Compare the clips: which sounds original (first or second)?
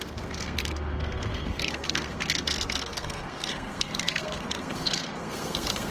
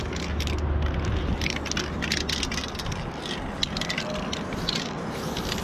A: second